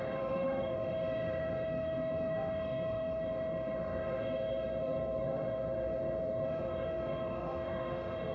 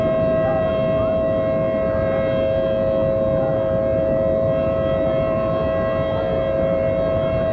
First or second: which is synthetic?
first